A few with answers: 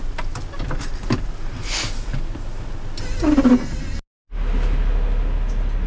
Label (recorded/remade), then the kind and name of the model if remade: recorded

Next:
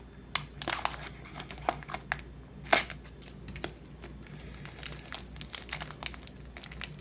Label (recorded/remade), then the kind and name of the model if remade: recorded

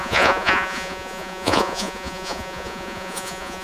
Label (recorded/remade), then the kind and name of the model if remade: remade, vocoder, Vocos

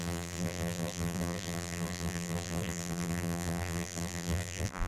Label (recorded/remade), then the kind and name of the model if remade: remade, vocoder, BigVGAN v2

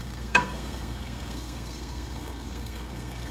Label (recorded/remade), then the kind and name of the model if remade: remade, codec, SNAC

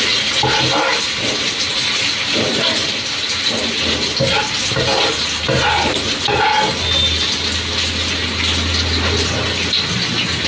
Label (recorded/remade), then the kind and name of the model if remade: recorded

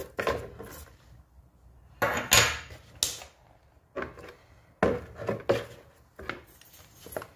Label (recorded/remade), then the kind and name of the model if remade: recorded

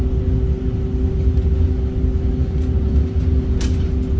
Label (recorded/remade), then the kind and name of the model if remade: recorded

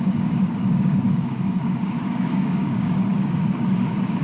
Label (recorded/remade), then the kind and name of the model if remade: remade, codec, DAC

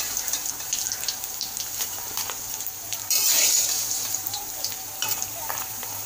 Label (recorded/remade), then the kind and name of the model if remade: remade, vocoder, BigVGAN v2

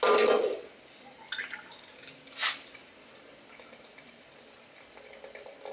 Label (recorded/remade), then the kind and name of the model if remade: recorded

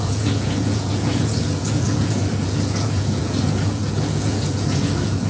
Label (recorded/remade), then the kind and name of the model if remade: remade, vocoder, Vocos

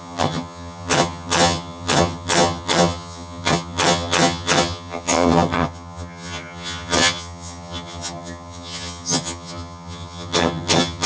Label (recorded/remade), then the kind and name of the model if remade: remade, vocoder, HiFi-GAN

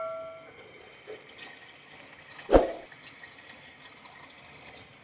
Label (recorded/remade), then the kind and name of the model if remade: recorded